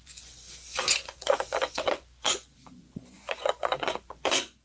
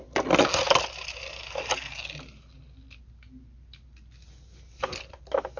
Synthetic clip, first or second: first